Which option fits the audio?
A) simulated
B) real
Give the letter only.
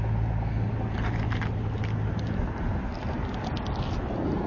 B